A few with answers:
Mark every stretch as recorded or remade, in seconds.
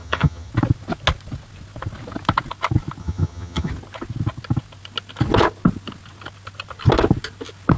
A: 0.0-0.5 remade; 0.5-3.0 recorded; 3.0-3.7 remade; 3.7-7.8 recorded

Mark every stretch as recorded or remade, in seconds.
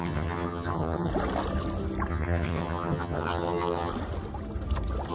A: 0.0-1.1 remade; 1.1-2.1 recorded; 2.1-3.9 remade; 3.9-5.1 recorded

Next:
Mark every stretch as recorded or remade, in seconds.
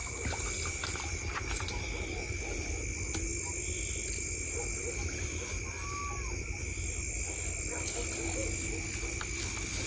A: 0.0-9.9 recorded